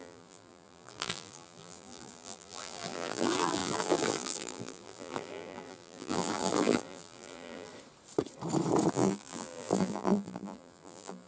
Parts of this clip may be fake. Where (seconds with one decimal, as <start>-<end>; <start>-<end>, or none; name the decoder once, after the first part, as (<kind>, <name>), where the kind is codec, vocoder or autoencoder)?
0.0-7.7 (vocoder, BigVGAN v2); 8.9-11.3